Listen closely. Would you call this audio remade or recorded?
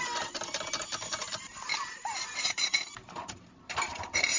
recorded